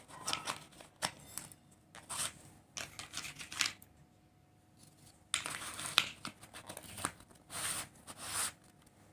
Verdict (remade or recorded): recorded